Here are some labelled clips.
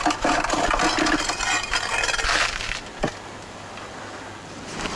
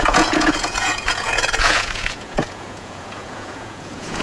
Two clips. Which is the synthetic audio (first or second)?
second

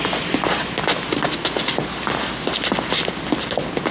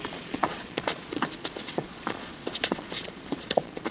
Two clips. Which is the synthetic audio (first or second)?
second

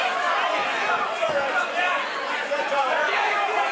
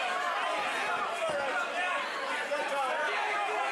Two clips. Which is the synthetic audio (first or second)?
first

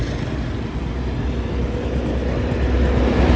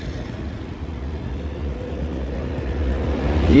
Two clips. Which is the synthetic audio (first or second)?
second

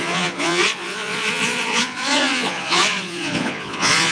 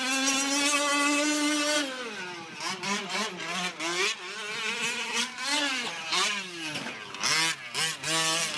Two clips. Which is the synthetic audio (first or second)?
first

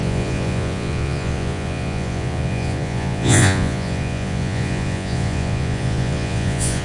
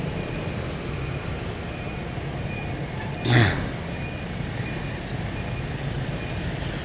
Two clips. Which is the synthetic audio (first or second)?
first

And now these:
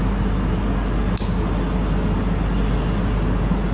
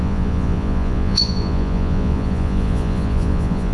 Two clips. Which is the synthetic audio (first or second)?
second